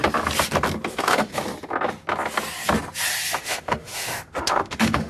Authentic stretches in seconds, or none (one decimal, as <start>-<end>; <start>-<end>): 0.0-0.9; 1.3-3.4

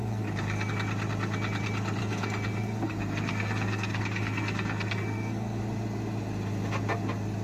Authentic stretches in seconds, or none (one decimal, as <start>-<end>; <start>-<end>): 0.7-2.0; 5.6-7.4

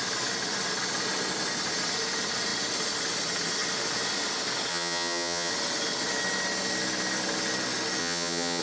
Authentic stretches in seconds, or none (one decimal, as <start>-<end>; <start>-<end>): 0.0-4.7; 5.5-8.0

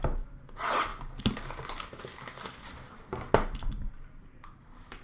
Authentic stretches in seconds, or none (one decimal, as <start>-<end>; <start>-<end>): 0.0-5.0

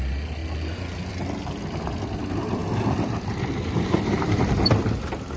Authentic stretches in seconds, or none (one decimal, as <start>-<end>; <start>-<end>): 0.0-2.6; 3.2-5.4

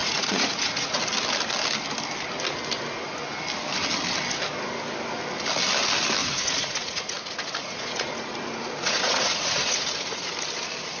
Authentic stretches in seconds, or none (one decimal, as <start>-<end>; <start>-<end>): 1.0-6.2; 10.3-11.0

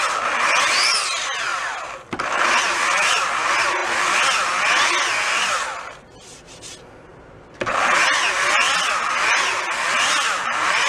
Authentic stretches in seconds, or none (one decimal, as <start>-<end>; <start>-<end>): 0.0-1.5; 3.2-10.9